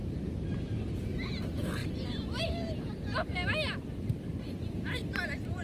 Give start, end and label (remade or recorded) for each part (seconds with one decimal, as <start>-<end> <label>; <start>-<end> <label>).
0.0-5.6 recorded